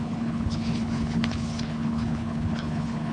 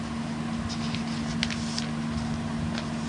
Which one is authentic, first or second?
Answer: second